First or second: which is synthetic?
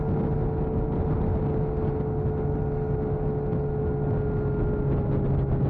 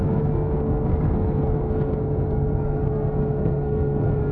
second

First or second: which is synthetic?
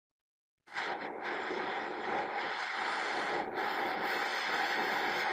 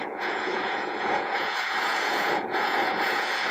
second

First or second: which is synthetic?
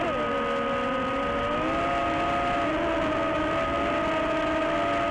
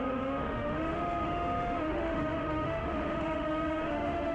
second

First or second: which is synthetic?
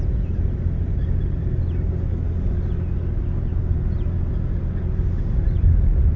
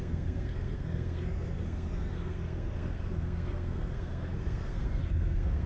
second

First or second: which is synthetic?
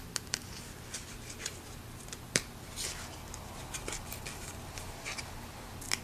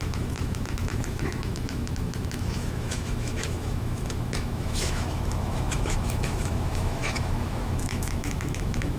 second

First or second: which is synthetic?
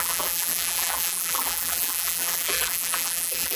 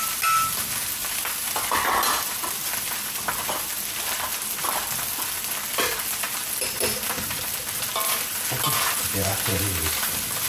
first